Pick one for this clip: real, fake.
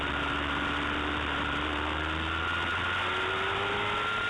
real